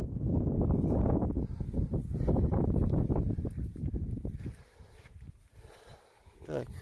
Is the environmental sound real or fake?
real